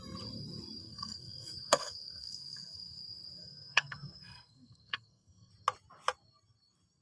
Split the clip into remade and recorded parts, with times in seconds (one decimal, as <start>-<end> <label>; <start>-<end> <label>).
0.0-0.8 recorded; 0.8-3.0 remade; 3.0-3.4 recorded; 3.4-5.5 remade; 5.5-7.0 recorded